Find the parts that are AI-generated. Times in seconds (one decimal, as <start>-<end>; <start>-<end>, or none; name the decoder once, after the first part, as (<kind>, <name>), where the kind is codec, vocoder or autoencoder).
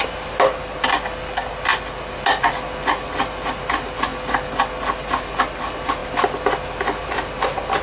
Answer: none